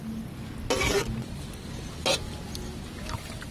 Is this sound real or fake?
real